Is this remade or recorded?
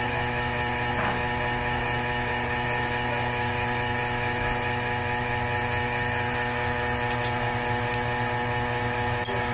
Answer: recorded